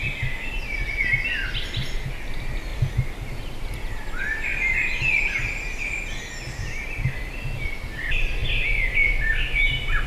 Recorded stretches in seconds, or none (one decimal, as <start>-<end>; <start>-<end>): 0.0-10.1